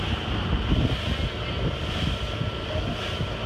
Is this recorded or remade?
recorded